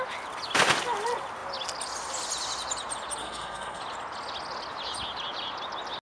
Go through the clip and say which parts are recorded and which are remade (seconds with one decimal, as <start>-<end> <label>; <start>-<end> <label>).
0.0-3.2 recorded; 3.2-3.8 remade; 3.8-6.1 recorded